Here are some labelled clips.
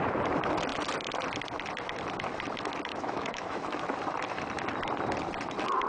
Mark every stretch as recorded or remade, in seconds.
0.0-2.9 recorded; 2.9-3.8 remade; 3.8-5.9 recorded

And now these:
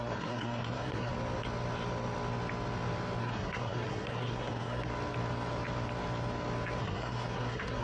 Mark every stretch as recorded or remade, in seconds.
0.0-1.1 remade; 1.1-3.2 recorded; 3.2-4.9 remade; 4.9-6.8 recorded; 6.8-7.8 remade

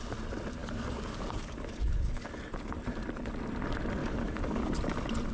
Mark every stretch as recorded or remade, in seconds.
0.0-0.6 recorded; 0.6-2.3 remade; 2.3-4.0 recorded; 4.0-4.8 remade; 4.8-5.3 recorded

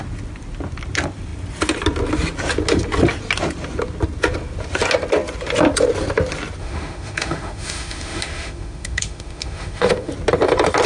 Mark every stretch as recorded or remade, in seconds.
0.0-6.6 recorded; 6.6-10.1 remade; 10.1-10.9 recorded

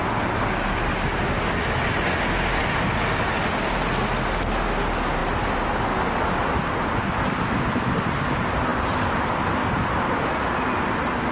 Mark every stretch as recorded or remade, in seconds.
0.0-2.6 recorded; 2.6-3.3 remade; 3.3-11.3 recorded

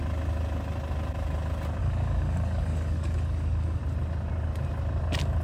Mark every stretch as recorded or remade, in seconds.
0.0-1.8 recorded; 1.8-3.8 remade; 3.8-5.4 recorded